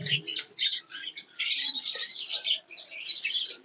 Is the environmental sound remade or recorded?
remade